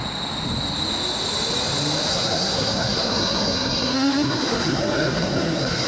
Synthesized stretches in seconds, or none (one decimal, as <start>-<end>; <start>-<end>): 2.1-5.9